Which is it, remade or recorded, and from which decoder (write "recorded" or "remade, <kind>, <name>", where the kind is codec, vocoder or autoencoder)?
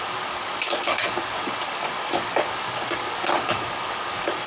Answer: remade, codec, DAC